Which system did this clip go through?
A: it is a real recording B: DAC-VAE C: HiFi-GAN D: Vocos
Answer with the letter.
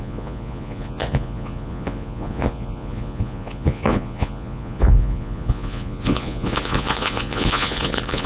D